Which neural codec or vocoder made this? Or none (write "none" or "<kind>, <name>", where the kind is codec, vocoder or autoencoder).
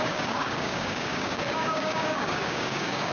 codec, DAC